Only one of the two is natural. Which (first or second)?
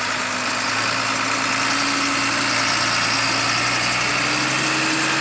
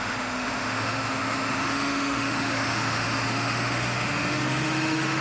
first